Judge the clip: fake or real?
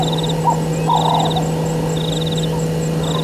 real